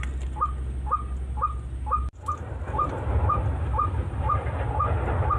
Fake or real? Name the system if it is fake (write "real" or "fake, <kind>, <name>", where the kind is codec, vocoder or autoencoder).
real